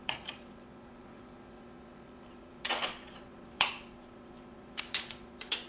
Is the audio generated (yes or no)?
yes